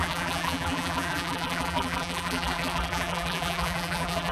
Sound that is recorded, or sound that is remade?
remade